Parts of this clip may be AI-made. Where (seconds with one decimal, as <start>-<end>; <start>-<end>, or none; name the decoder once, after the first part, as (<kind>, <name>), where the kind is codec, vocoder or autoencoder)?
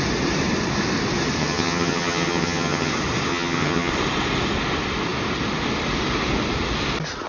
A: 1.4-2.9 (vocoder, HiFi-GAN); 3.3-3.9